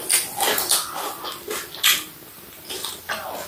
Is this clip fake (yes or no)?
no